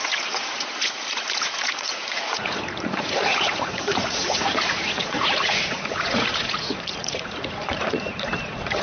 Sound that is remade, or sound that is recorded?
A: remade